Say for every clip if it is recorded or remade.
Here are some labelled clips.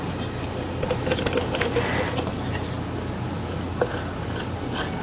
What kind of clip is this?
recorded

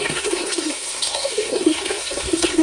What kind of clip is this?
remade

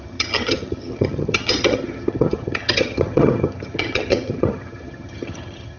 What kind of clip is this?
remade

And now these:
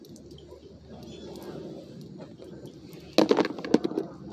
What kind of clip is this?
recorded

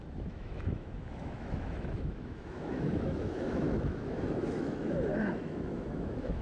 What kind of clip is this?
remade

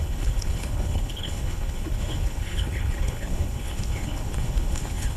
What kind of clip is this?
remade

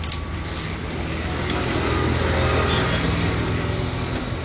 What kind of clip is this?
recorded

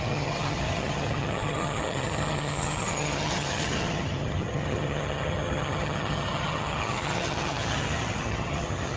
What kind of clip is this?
remade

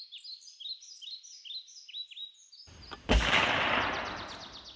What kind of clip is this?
recorded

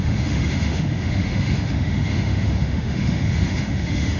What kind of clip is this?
remade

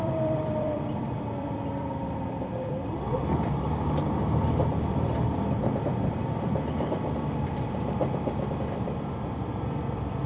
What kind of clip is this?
remade